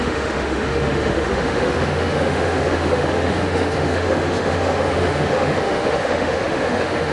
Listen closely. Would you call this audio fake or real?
fake